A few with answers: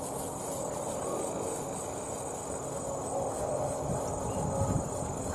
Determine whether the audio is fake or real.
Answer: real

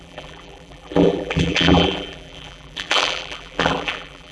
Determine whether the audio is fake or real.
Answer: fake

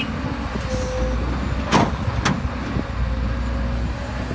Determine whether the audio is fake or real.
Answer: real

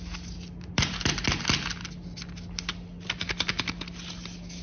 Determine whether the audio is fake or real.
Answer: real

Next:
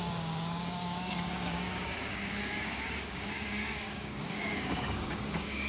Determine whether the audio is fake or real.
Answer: fake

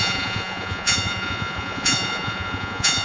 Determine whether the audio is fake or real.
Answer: fake